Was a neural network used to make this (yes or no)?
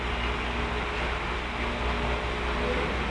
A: no